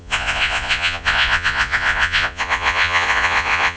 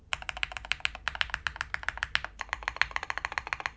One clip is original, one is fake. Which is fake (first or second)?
first